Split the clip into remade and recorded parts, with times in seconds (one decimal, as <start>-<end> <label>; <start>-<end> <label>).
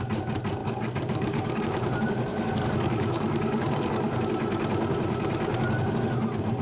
0.0-0.6 recorded; 0.6-1.6 remade; 1.6-2.3 recorded; 2.3-4.2 remade; 4.2-6.6 recorded